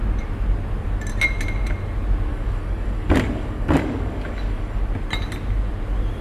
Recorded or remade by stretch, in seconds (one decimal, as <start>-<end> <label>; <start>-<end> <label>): 0.0-2.3 recorded; 2.3-4.8 remade; 4.8-6.2 recorded

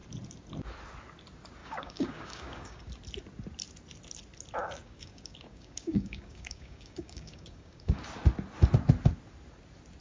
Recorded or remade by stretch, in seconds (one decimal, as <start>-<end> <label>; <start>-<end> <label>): 0.0-1.6 recorded; 1.6-2.9 remade; 2.9-4.6 recorded; 4.6-8.0 remade; 8.0-10.0 recorded

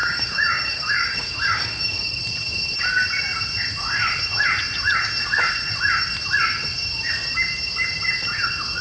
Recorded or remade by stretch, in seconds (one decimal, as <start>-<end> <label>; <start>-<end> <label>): 0.0-2.2 remade; 2.2-8.8 recorded